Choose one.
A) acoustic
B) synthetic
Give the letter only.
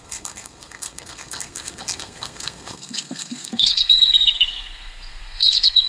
B